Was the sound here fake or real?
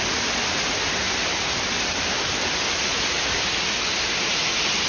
real